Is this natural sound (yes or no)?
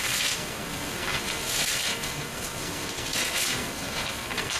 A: no